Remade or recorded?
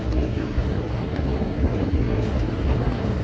remade